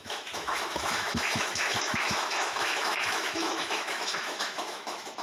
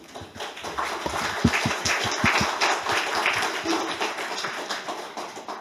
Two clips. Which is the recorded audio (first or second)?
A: second